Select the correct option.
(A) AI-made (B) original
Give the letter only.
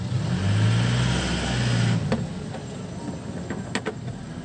B